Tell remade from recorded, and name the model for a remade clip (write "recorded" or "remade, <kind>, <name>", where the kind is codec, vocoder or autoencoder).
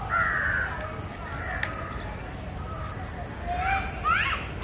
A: recorded